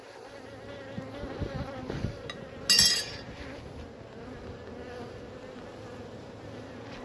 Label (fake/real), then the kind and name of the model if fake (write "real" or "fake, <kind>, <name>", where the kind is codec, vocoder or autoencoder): real